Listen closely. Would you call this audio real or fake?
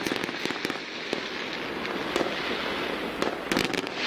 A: real